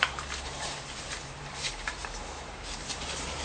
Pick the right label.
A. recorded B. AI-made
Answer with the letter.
B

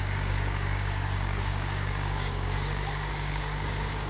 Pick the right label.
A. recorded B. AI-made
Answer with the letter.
B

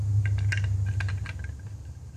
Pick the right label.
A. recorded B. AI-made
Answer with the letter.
A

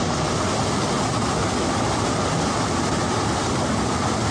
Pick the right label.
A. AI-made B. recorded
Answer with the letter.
B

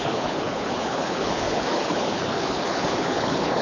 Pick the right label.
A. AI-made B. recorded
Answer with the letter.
A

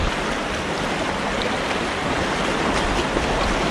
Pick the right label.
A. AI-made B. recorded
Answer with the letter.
B